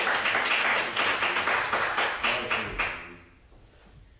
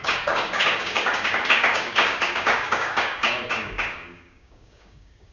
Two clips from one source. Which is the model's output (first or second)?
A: second